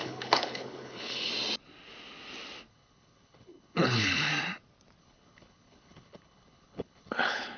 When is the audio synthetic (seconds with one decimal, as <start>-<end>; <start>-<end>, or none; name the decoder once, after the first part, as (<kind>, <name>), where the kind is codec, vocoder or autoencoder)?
0.0-1.3 (codec, HILCodec); 2.7-4.3; 5.0-7.6